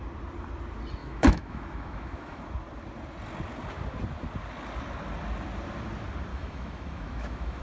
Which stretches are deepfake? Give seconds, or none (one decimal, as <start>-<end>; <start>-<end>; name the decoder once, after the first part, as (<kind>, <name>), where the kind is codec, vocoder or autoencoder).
1.0-2.4 (autoencoder, DAC-VAE); 6.3-7.6